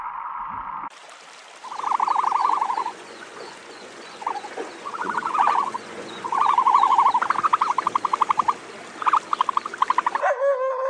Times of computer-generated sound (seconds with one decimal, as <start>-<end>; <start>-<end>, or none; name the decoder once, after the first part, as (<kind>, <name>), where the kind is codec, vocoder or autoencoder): 2.4-7.0 (vocoder, Vocos)